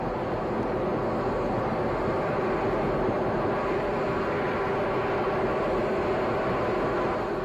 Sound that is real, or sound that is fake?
real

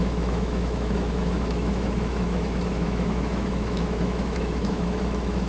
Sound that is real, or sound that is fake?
fake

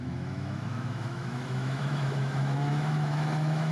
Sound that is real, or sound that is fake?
fake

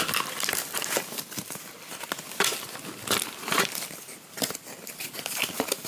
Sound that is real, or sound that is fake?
real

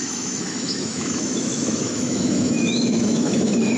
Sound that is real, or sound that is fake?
fake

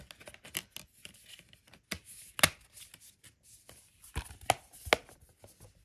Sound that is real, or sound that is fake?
real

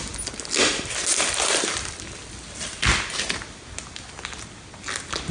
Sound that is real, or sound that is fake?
real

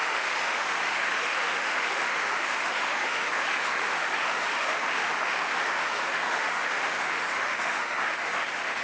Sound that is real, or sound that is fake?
fake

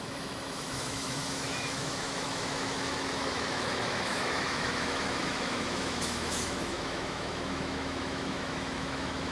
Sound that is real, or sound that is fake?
fake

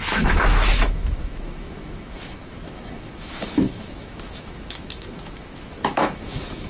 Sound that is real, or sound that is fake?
fake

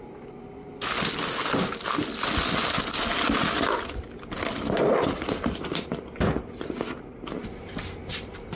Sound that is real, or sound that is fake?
real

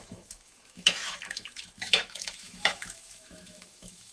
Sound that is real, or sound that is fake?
fake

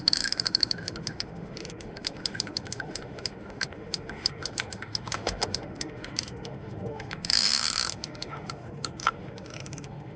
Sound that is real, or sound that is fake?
fake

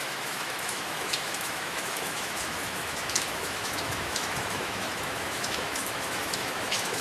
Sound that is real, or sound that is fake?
fake